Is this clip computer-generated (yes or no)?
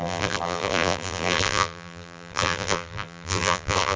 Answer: yes